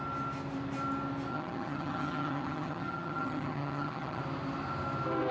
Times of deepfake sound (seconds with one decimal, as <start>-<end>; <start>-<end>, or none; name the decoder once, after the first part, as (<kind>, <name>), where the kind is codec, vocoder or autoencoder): 1.3-4.2 (vocoder, HiFi-GAN)

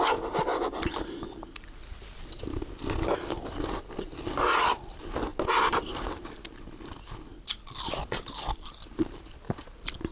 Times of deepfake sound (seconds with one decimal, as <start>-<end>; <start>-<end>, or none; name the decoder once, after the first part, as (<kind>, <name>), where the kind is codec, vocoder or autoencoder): none

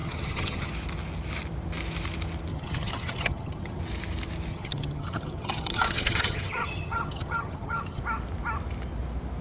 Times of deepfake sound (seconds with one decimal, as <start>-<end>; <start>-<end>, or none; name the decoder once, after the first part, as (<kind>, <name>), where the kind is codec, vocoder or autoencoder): 0.0-0.7 (vocoder, HiFi-GAN); 2.5-3.8; 4.5-8.0

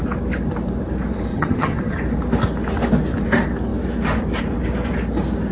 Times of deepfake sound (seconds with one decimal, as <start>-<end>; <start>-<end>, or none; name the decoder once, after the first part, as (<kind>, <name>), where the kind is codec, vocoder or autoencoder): 1.3-2.0 (vocoder, HiFi-GAN)

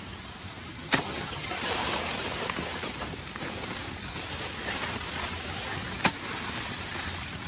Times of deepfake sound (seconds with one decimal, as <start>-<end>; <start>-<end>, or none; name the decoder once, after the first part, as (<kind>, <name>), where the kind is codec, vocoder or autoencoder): 0.7-1.5 (vocoder, HiFi-GAN)

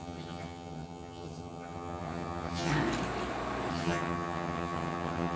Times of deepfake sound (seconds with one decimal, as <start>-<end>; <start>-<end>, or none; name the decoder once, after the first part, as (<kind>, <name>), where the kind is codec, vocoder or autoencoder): 0.0-2.7 (vocoder, HiFi-GAN); 3.7-5.4

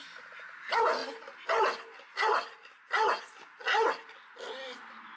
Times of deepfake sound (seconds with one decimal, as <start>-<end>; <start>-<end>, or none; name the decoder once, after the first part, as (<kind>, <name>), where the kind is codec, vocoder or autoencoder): none

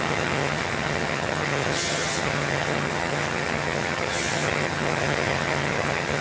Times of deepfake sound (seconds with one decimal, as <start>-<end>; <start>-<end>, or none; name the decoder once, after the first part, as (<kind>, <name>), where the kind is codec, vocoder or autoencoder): 0.0-6.2 (vocoder, HiFi-GAN)